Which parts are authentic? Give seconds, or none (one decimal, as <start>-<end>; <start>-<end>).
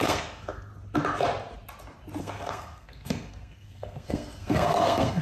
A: 0.7-2.2